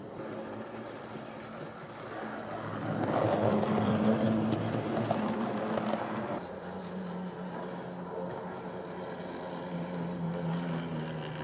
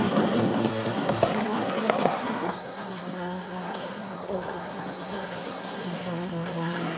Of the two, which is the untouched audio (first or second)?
first